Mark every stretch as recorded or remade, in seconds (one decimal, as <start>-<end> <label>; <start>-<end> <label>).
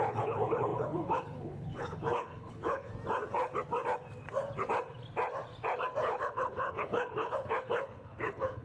0.0-2.9 remade; 2.9-6.1 recorded; 6.1-8.6 remade